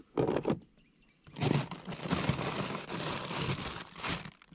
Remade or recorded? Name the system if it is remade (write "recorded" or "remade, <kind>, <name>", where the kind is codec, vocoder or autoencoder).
recorded